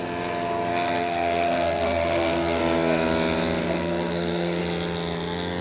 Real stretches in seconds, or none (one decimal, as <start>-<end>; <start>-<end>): 0.0-0.7; 2.6-3.6; 4.6-5.6